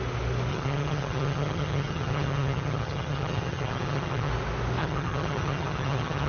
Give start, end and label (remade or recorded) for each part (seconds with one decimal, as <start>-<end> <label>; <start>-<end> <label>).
0.0-0.5 recorded; 0.5-4.3 remade; 4.3-4.8 recorded; 4.8-6.3 remade